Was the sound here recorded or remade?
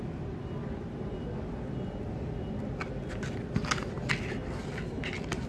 recorded